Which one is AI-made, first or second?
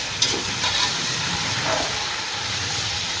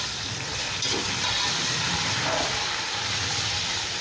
first